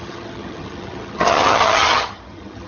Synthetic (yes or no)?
yes